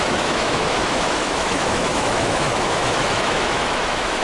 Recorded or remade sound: remade